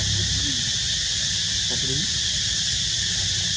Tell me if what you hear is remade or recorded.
recorded